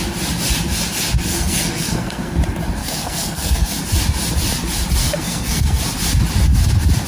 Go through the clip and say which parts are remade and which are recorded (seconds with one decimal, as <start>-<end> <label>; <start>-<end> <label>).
0.0-1.3 recorded; 1.3-2.4 remade; 2.4-2.8 recorded; 2.8-3.8 remade; 3.8-5.0 recorded; 5.0-5.8 remade; 5.8-7.1 recorded